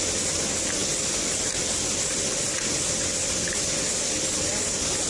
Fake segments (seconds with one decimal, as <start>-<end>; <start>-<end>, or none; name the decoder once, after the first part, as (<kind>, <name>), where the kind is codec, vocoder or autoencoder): none